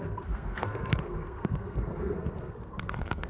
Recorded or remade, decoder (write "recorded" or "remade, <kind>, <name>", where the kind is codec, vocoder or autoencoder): remade, codec, SNAC